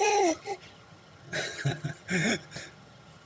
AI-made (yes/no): yes